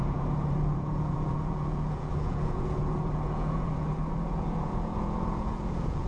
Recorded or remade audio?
remade